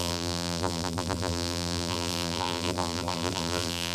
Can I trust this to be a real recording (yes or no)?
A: no